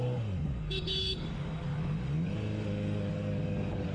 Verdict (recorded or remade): remade